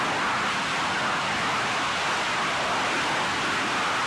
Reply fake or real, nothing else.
real